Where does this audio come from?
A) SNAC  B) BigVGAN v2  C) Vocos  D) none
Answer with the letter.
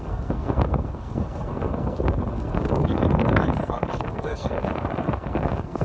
A